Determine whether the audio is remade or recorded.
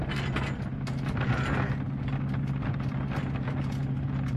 recorded